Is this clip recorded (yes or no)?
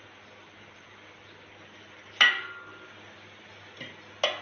yes